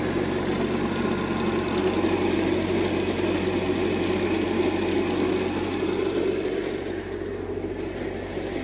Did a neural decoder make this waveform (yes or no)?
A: no